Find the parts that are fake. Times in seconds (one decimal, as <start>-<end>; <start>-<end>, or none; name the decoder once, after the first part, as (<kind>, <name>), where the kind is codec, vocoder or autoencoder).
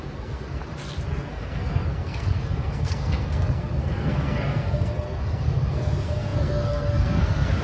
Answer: 0.0-0.6 (codec, SNAC); 1.1-7.6